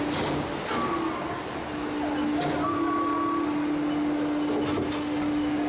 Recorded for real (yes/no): yes